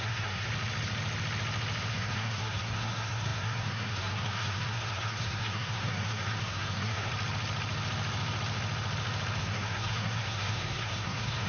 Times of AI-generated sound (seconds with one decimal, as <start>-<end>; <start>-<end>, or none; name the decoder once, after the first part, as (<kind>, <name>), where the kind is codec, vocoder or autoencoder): 0.0-0.5 (codec, SNAC); 1.9-7.1; 9.4-11.5

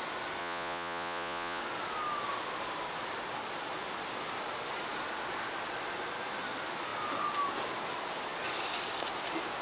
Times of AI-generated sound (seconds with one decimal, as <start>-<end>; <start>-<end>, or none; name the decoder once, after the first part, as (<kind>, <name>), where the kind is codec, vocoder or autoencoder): 0.4-1.6 (vocoder, Vocos)

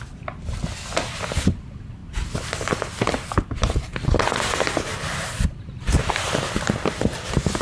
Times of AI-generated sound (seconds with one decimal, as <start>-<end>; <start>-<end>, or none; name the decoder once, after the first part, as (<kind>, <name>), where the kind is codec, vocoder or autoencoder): 4.9-6.0 (vocoder, BigVGAN v2)